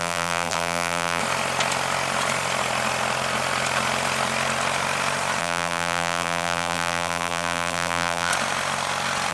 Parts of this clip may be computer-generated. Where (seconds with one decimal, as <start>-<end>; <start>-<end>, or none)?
0.0-1.2; 5.4-8.3